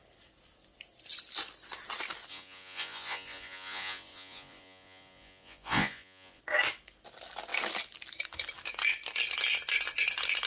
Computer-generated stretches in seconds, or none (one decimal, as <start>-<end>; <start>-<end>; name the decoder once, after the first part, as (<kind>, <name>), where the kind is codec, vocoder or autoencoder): 2.3-6.4 (vocoder, Vocos)